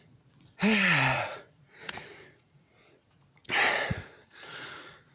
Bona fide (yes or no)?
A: no